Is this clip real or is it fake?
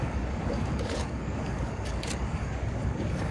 fake